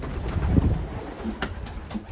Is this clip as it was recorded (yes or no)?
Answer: yes